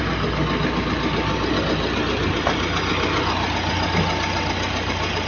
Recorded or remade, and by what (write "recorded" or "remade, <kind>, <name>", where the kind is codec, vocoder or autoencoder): recorded